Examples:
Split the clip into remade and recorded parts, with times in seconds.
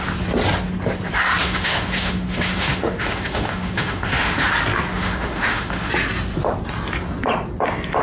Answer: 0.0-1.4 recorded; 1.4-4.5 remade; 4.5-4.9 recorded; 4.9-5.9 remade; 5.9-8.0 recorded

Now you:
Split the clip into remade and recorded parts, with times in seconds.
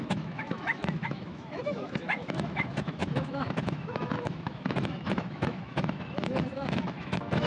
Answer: 0.0-7.5 remade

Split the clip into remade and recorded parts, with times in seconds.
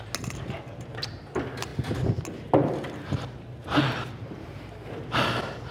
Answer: 0.0-5.7 recorded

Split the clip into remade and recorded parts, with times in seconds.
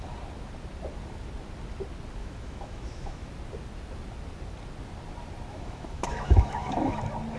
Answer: 0.0-2.2 recorded; 2.2-3.3 remade; 3.3-5.5 recorded; 5.5-7.0 remade; 7.0-7.4 recorded